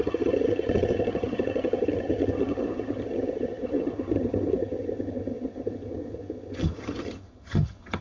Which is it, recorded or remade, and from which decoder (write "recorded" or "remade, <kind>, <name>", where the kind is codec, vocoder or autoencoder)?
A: remade, vocoder, HiFi-GAN